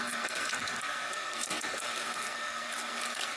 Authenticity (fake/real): fake